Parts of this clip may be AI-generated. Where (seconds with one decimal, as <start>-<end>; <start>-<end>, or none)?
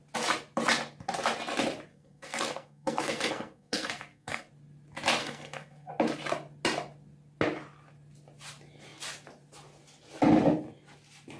1.9-4.5; 5.2-5.9